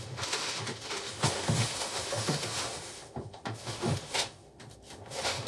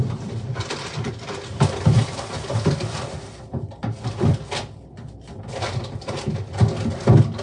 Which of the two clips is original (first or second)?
second